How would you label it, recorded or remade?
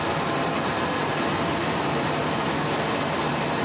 recorded